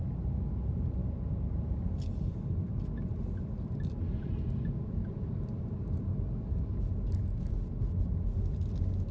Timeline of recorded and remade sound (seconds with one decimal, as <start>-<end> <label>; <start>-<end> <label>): 0.0-1.0 recorded; 1.0-1.8 remade; 1.8-9.1 recorded